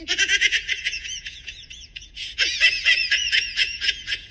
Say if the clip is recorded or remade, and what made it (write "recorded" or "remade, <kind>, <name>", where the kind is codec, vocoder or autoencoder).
remade, vocoder, Vocos